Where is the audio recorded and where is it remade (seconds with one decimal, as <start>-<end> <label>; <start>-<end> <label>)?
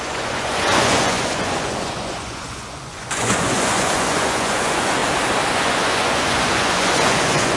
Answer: 0.0-5.0 remade; 5.0-5.5 recorded; 5.5-7.6 remade